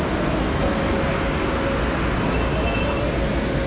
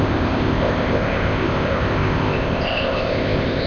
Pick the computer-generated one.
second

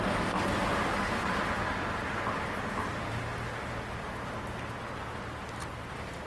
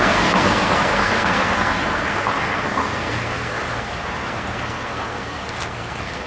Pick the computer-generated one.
second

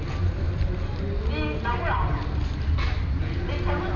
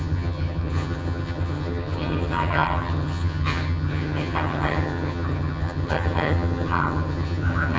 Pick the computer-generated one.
second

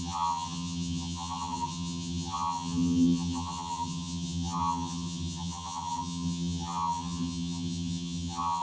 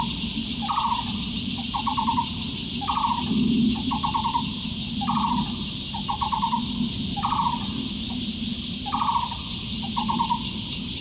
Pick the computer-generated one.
first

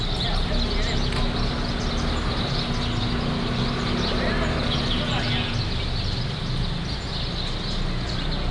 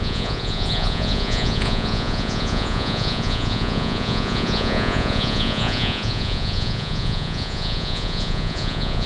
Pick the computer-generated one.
second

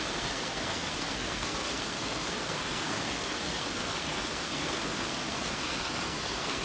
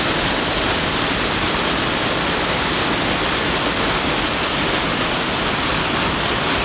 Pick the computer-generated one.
first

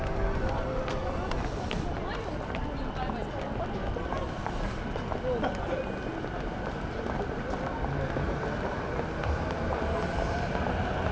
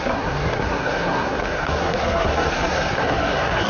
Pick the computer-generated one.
second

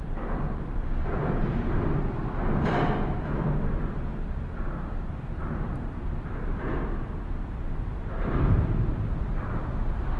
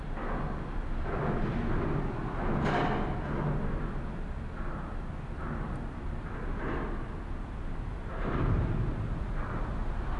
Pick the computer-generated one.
first